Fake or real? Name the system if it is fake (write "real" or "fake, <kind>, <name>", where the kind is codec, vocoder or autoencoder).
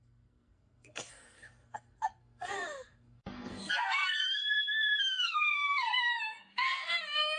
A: fake, codec, SNAC